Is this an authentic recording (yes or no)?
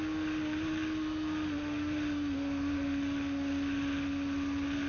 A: yes